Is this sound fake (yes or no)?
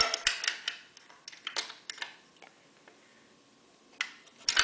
no